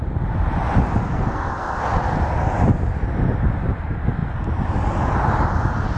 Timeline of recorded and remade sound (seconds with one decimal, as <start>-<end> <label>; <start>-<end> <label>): 0.0-1.0 recorded; 1.0-1.8 remade; 1.8-6.0 recorded